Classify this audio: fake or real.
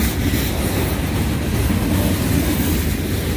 real